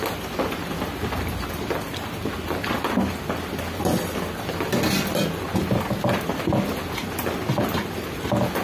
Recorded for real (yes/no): yes